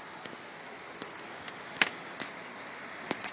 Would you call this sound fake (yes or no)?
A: no